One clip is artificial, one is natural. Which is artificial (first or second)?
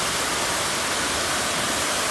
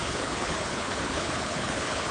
second